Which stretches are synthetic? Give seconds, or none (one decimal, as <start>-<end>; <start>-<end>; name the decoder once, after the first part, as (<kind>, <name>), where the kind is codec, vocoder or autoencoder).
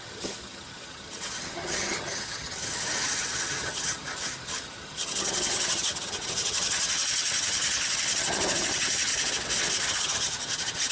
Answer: 0.0-9.1 (vocoder, HiFi-GAN); 9.9-10.9